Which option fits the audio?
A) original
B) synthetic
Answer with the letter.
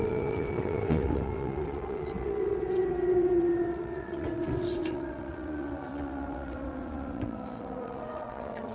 B